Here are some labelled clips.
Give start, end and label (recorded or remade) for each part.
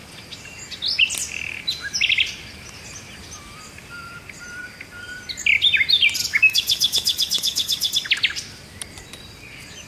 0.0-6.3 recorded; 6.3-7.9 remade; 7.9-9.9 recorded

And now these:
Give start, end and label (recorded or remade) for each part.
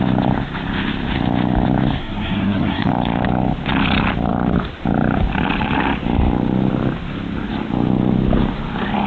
0.0-2.0 recorded; 2.0-2.9 remade; 2.9-9.1 recorded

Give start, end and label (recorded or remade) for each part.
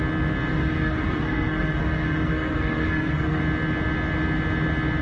0.0-0.5 recorded; 0.5-3.4 remade; 3.4-5.0 recorded